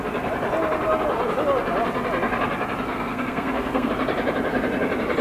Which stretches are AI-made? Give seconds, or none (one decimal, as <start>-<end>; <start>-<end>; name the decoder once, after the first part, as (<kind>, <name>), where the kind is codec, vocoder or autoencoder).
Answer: 2.9-3.9 (codec, SNAC)